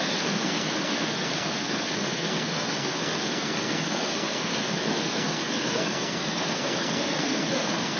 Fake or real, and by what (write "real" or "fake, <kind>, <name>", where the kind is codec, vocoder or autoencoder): fake, codec, SNAC